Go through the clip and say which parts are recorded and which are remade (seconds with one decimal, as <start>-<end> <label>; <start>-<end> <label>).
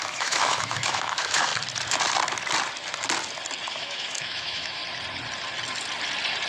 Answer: 0.0-1.5 remade; 1.5-3.7 recorded; 3.7-4.8 remade; 4.8-6.5 recorded